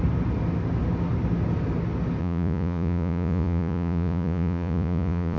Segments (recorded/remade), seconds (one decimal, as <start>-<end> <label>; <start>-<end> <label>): 0.0-2.2 recorded; 2.2-5.4 remade